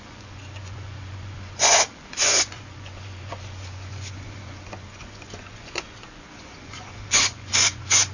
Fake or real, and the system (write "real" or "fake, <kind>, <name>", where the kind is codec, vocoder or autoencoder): fake, vocoder, Vocos